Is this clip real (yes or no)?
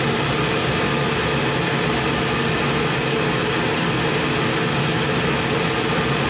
yes